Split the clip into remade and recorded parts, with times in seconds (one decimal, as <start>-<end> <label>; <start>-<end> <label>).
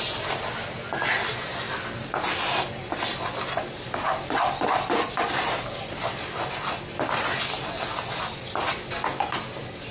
0.0-9.9 recorded